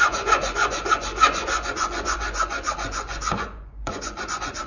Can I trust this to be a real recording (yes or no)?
no